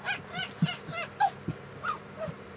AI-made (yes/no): no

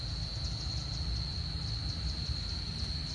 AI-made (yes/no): no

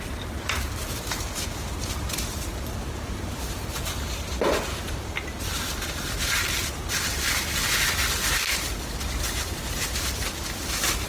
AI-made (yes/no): no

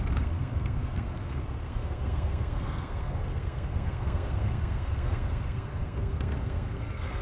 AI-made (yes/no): yes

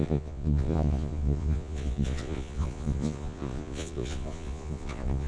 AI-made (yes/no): yes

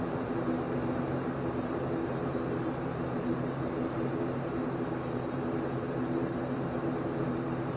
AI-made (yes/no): yes